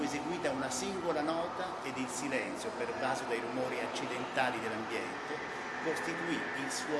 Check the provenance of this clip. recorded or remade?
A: recorded